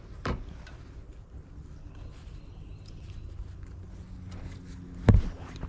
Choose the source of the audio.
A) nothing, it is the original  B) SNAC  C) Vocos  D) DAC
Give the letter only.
A